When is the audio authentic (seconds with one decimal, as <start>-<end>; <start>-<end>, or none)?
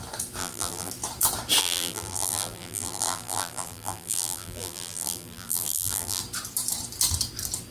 0.0-0.4; 0.9-1.6; 6.2-7.7